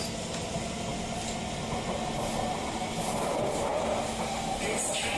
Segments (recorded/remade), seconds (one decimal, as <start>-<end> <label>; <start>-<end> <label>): 0.0-5.2 recorded